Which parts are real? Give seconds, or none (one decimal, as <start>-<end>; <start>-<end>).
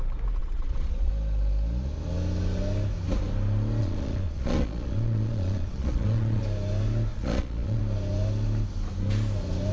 0.0-0.4; 1.1-3.8; 6.4-7.1; 7.8-9.7